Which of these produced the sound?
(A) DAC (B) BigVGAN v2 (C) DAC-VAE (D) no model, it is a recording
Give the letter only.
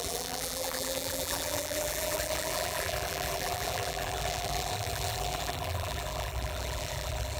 B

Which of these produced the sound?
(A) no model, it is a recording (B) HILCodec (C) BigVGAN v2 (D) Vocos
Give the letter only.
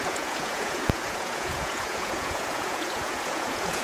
D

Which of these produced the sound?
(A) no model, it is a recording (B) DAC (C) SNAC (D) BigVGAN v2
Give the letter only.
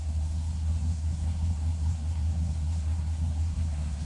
C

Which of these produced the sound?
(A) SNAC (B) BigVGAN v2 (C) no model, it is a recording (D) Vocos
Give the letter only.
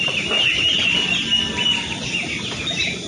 C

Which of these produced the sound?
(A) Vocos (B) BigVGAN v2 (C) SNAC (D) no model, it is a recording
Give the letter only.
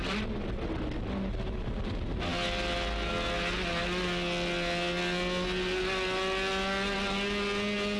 D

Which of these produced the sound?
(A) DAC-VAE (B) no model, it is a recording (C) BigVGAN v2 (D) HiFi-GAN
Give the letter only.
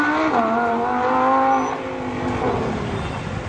B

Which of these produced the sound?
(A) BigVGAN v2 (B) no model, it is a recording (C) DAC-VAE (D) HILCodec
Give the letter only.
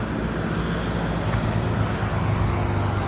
B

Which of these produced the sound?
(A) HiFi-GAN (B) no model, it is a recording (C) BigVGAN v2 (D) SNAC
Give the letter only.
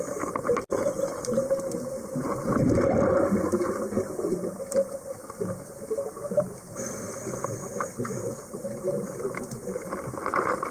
B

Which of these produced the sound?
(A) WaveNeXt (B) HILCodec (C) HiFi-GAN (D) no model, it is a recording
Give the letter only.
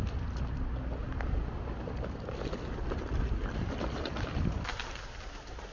D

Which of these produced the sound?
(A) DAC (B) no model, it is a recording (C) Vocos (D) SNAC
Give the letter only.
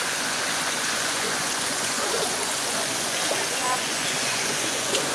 C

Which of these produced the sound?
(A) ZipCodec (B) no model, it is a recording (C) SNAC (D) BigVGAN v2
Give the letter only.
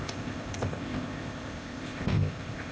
A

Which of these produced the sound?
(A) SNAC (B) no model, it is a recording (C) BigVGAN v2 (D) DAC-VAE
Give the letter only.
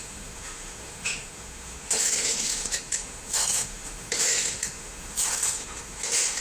D